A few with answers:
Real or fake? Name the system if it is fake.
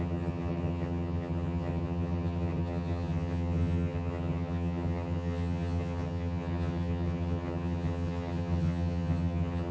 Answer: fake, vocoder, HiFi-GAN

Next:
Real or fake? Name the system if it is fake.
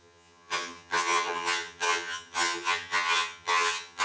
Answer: fake, vocoder, HiFi-GAN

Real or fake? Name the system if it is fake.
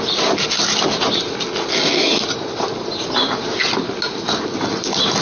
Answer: real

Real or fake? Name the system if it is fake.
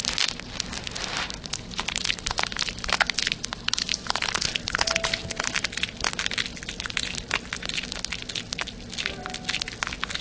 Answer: real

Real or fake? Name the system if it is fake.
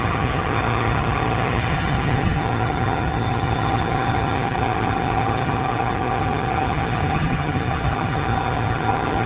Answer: fake, vocoder, HiFi-GAN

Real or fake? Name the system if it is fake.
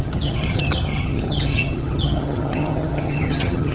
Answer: fake, vocoder, HiFi-GAN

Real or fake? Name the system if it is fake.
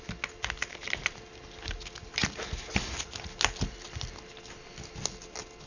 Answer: real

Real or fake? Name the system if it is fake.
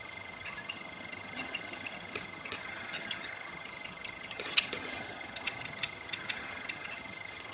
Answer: fake, vocoder, HiFi-GAN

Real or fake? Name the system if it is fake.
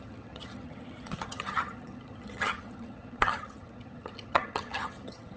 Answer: fake, vocoder, HiFi-GAN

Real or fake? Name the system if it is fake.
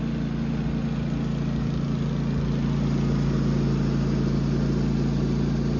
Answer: real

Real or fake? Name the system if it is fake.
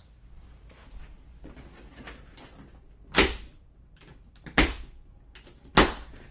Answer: real